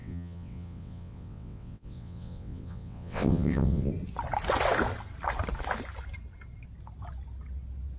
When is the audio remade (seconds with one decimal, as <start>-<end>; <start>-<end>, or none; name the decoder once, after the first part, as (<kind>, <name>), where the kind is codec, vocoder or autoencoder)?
0.0-3.9 (vocoder, WaveNeXt)